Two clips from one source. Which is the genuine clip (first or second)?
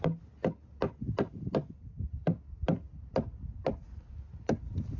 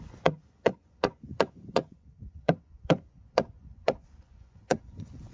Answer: first